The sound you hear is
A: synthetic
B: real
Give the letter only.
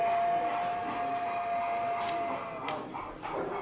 B